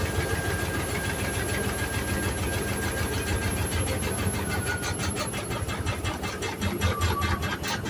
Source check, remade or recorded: recorded